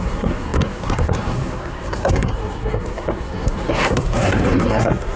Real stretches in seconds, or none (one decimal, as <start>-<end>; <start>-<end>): none